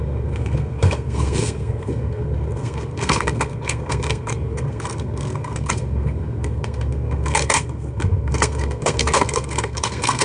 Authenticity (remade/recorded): remade